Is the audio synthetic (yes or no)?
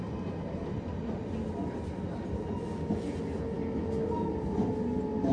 no